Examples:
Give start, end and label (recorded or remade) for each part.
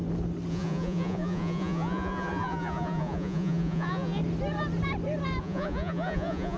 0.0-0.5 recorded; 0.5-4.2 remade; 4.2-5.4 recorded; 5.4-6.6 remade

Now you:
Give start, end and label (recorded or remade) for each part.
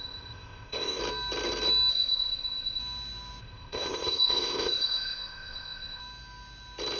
0.0-1.0 remade; 1.0-1.9 recorded; 1.9-2.8 remade; 2.8-3.4 recorded; 3.4-6.0 remade; 6.0-7.0 recorded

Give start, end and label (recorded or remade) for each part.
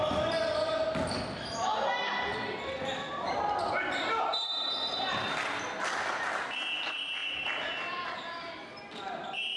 0.0-9.6 recorded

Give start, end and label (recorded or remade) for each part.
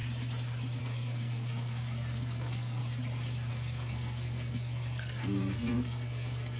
0.0-0.8 recorded; 0.8-2.8 remade; 2.8-3.5 recorded; 3.5-6.6 remade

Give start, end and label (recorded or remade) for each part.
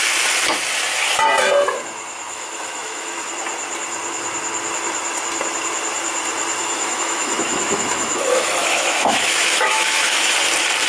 0.0-2.3 recorded; 2.3-3.3 remade; 3.3-6.6 recorded; 6.6-10.3 remade; 10.3-10.9 recorded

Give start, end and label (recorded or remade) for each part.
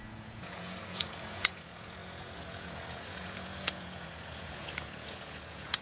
0.0-5.8 remade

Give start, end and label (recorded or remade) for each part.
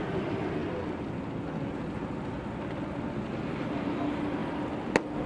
0.0-5.3 recorded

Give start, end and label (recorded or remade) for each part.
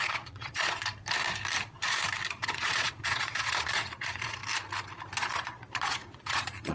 0.0-0.8 remade; 0.8-2.3 recorded; 2.3-4.4 remade; 4.4-5.2 recorded; 5.2-6.7 remade